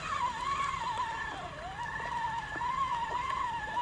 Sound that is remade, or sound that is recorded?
recorded